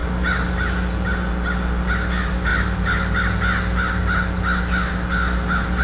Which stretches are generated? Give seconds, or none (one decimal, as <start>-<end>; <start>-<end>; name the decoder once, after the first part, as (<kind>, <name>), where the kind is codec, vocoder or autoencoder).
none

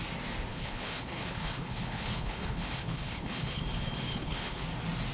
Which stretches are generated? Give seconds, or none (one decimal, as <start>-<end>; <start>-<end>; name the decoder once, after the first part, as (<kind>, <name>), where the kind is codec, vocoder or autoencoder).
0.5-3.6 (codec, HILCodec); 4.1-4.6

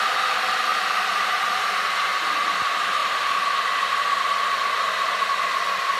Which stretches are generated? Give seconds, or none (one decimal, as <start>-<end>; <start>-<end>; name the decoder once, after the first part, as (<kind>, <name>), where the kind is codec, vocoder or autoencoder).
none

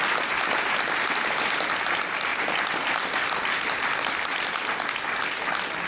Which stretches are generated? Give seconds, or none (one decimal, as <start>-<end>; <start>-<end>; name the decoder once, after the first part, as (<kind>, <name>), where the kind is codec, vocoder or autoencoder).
none

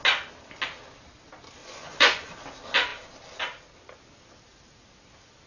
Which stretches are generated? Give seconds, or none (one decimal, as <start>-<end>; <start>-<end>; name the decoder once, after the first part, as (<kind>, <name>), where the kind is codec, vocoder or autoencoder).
1.6-2.3 (vocoder, Vocos)